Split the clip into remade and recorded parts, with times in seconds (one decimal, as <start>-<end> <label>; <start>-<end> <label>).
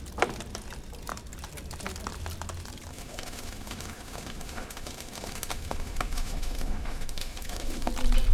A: 0.0-2.9 recorded; 2.9-7.9 remade; 7.9-8.3 recorded